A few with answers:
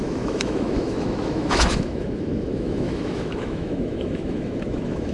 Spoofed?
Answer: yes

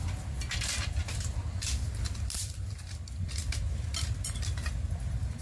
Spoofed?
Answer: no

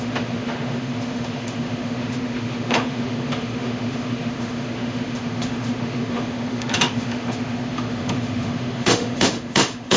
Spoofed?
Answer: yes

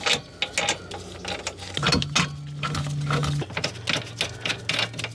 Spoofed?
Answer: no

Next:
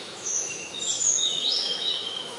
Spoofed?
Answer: yes